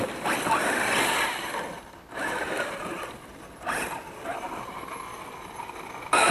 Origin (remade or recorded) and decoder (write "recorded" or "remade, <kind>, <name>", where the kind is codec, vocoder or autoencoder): recorded